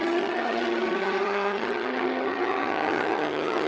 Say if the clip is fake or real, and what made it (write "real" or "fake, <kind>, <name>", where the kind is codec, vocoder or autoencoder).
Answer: fake, vocoder, HiFi-GAN